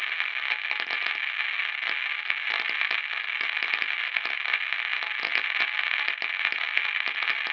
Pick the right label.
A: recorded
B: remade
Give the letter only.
A